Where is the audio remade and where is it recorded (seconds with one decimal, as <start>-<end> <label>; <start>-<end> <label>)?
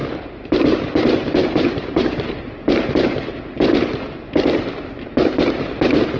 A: 0.0-0.8 remade; 0.8-1.4 recorded; 1.4-5.1 remade; 5.1-6.2 recorded